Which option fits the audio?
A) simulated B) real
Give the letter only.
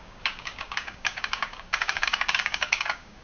A